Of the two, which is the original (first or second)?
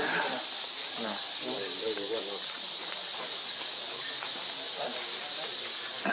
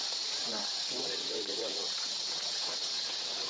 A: first